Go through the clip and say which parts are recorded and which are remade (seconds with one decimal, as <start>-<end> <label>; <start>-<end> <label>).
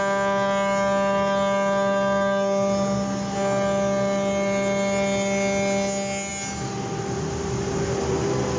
0.0-8.6 recorded